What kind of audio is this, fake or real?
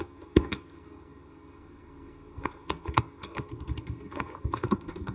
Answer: fake